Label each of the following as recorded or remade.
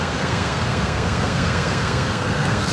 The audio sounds remade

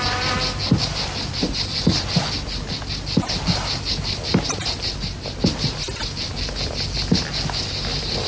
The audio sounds recorded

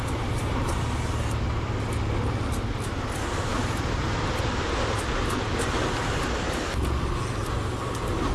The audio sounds recorded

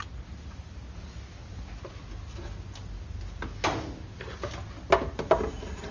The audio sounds recorded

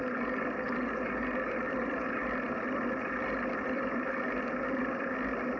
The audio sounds recorded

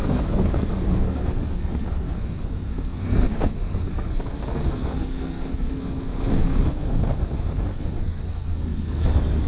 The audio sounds remade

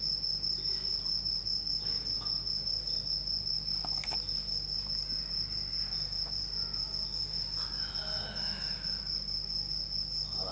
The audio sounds recorded